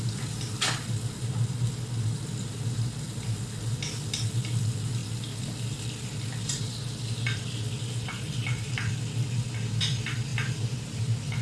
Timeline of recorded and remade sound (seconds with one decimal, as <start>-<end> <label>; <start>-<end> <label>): 0.0-10.3 recorded; 10.3-11.0 remade; 11.0-11.4 recorded